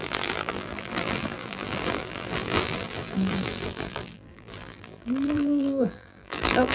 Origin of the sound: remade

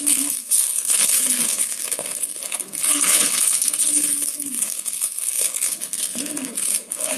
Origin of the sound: remade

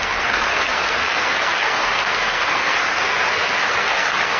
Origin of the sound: remade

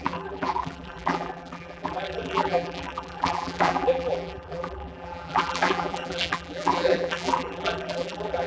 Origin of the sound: remade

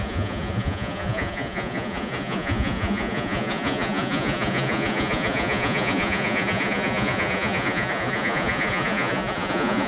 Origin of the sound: remade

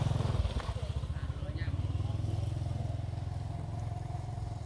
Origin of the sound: recorded